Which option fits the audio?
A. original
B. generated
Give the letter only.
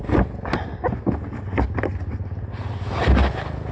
A